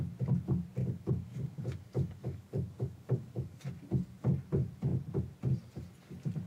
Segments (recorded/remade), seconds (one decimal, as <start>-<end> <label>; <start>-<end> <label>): 0.0-0.8 recorded; 0.8-3.6 remade; 3.6-6.5 recorded